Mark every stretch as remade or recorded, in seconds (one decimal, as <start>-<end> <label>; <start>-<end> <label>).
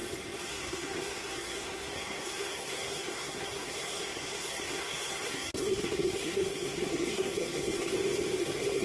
0.0-0.5 recorded; 0.5-7.9 remade; 7.9-8.4 recorded; 8.4-8.8 remade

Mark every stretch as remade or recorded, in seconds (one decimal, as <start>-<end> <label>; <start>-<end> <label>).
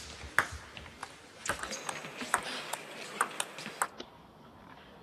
0.0-5.0 recorded